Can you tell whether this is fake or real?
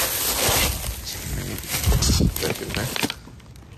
real